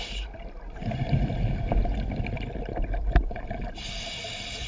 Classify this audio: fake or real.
real